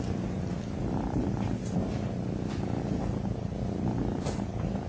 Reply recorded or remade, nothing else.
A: recorded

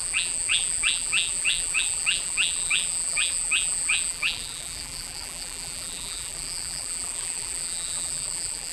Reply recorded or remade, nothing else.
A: remade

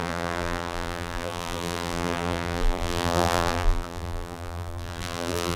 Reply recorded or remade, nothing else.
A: remade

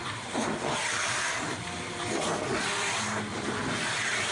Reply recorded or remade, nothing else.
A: remade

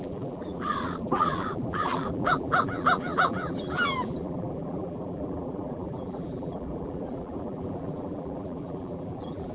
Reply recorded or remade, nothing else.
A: remade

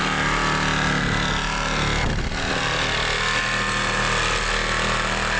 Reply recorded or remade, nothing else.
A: recorded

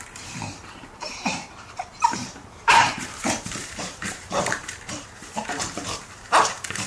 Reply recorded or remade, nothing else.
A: remade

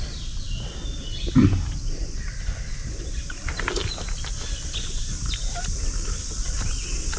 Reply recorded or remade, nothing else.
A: recorded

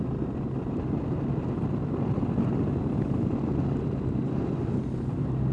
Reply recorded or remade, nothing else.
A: recorded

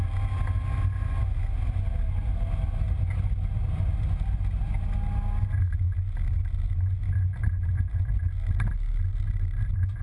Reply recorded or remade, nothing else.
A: recorded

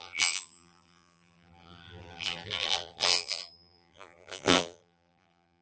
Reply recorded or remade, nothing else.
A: remade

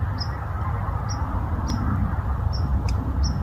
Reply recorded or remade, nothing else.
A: recorded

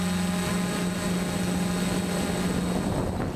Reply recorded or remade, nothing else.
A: recorded